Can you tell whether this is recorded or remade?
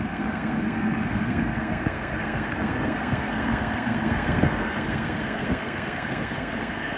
remade